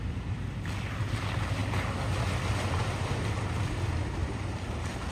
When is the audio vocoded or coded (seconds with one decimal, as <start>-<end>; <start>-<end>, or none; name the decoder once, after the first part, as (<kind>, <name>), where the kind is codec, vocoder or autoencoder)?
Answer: 4.2-5.1 (vocoder, BigVGAN v2)

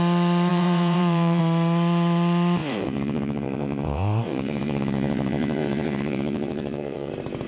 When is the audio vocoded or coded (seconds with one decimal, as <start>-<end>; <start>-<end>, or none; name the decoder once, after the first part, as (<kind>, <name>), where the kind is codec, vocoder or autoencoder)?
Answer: 0.5-1.4 (vocoder, WaveNeXt); 2.6-7.1

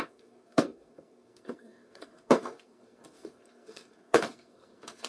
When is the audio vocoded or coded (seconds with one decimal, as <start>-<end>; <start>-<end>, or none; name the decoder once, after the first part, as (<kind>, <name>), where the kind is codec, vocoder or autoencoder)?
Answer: 0.0-5.1 (codec, SNAC)

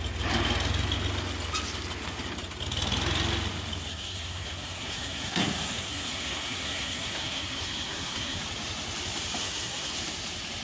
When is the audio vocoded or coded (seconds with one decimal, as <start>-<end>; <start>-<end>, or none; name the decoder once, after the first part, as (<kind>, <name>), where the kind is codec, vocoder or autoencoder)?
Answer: 3.9-8.4 (codec, SNAC); 9.4-9.9

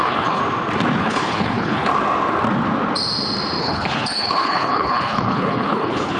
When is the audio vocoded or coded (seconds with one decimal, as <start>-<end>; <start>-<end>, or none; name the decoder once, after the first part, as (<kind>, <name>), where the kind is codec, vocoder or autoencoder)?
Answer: 0.0-0.4 (codec, HILCodec); 1.0-1.9; 3.6-6.2